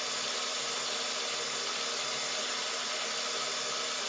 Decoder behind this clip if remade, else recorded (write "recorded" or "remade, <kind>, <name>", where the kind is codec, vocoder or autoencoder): recorded